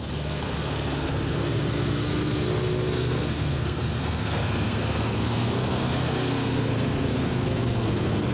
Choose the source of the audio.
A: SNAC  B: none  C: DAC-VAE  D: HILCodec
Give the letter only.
A